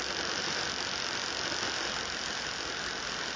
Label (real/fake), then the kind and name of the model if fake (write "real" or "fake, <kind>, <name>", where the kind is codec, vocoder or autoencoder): real